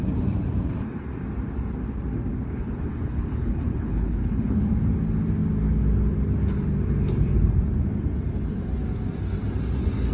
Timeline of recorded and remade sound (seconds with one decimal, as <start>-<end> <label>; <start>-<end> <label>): 0.0-2.3 recorded; 2.3-4.7 remade; 4.7-10.1 recorded

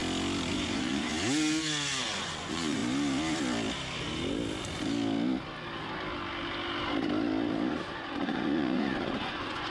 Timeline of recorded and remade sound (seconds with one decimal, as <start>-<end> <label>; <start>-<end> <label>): 0.0-0.5 recorded; 0.5-1.1 remade; 1.1-2.0 recorded; 2.0-2.8 remade; 2.8-7.7 recorded; 7.7-9.7 remade